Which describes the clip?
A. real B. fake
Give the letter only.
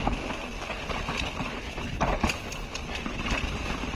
A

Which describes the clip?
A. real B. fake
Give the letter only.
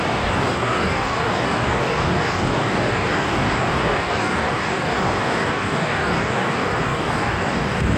B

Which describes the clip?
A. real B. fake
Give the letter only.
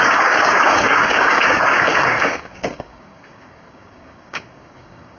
B